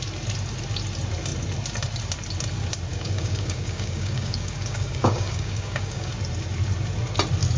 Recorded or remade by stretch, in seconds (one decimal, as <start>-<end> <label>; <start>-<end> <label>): 0.0-2.9 recorded; 2.9-6.1 remade; 6.1-7.6 recorded